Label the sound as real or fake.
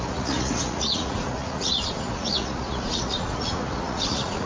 fake